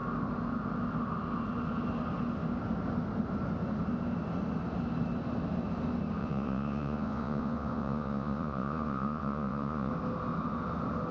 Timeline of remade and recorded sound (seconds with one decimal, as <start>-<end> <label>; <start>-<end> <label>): 0.0-6.2 recorded; 6.2-9.9 remade; 9.9-11.1 recorded